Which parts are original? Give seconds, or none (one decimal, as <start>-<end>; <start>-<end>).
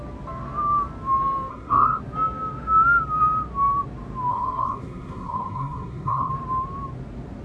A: 0.0-1.5; 2.0-4.3; 6.3-7.4